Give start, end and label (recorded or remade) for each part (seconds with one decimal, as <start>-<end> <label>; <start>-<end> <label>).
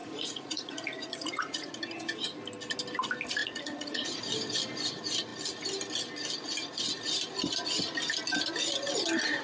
0.0-1.7 remade; 1.7-3.4 recorded; 3.4-4.2 remade; 4.2-9.4 recorded